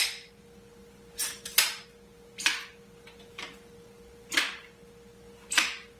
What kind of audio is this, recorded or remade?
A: recorded